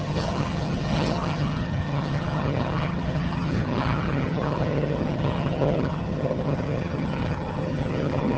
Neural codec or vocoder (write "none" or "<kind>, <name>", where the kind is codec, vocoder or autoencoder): vocoder, HiFi-GAN